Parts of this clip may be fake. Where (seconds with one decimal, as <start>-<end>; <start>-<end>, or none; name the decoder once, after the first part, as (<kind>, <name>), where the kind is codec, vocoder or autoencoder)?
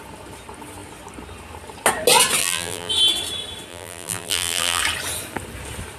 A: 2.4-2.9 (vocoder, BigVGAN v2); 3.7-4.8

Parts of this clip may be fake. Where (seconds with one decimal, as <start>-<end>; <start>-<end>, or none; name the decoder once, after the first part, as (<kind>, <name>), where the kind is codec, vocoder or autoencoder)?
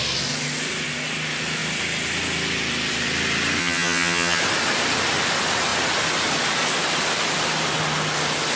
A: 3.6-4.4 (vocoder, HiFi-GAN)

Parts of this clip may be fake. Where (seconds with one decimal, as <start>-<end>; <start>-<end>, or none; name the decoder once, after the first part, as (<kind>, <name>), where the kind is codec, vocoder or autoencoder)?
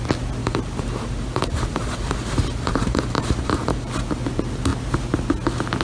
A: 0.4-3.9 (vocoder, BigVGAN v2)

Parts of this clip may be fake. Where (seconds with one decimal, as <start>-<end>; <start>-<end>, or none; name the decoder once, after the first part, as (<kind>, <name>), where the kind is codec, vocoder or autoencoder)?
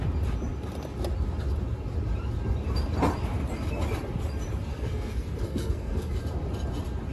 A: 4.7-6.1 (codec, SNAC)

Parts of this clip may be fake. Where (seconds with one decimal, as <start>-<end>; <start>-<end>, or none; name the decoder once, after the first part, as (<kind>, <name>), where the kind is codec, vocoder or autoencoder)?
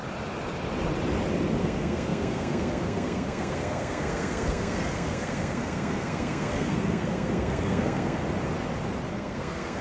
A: 1.6-8.2 (codec, SNAC); 9.1-9.8